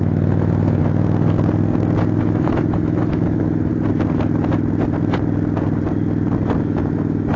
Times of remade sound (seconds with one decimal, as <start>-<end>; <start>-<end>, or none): 0.0-0.8; 2.2-3.7; 6.6-7.4